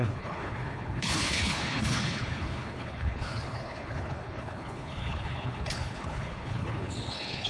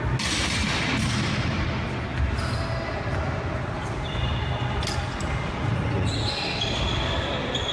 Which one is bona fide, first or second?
second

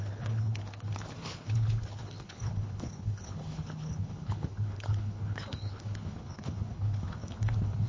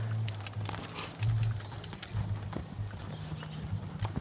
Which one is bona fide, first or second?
second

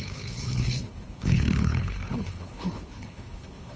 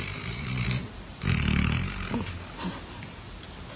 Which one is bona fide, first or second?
second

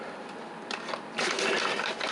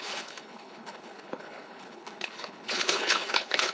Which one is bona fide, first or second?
first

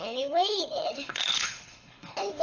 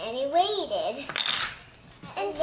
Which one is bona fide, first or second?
second